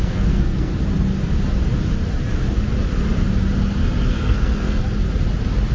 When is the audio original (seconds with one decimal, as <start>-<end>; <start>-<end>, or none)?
0.7-4.1; 4.8-5.7